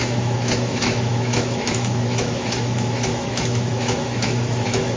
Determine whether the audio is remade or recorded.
remade